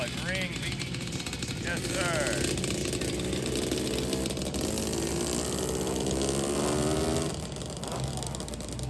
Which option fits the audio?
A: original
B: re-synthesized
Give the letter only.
A